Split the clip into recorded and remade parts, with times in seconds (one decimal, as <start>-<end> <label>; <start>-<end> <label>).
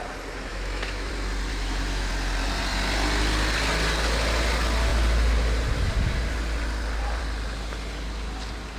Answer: 0.0-0.5 recorded; 0.5-1.1 remade; 1.1-1.5 recorded; 1.5-2.1 remade; 2.1-8.8 recorded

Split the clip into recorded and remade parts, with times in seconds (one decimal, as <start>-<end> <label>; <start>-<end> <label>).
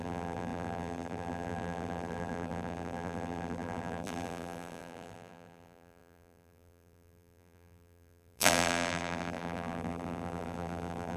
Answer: 0.0-11.2 remade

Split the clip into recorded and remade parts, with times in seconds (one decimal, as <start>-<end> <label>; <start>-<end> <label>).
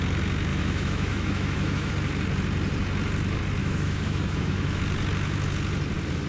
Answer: 0.0-0.5 recorded; 0.5-1.9 remade; 1.9-3.6 recorded; 3.6-4.8 remade; 4.8-6.3 recorded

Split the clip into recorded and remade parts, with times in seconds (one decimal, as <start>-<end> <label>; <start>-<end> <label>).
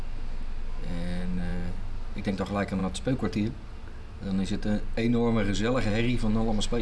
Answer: 0.0-6.8 recorded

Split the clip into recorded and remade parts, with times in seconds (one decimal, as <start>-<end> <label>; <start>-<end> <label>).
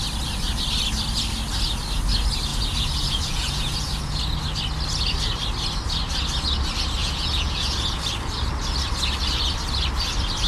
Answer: 0.0-2.5 recorded; 2.5-4.1 remade; 4.1-7.0 recorded; 7.0-8.0 remade; 8.0-10.5 recorded